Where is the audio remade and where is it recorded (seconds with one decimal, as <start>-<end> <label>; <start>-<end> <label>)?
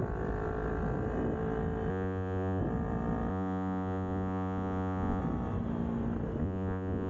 0.0-1.9 recorded; 1.9-2.6 remade; 2.6-3.3 recorded; 3.3-5.2 remade; 5.2-6.4 recorded; 6.4-7.1 remade